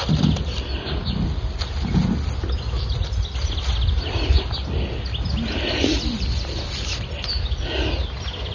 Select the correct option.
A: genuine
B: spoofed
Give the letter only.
A